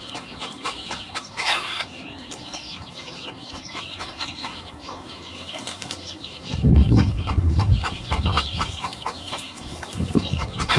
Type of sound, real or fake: fake